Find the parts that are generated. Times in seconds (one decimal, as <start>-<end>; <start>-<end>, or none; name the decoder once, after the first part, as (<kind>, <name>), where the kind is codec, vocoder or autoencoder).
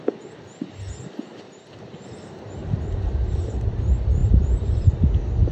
1.3-3.6 (vocoder, BigVGAN v2); 4.2-4.9